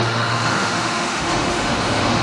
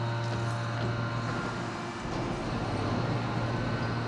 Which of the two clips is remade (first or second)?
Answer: first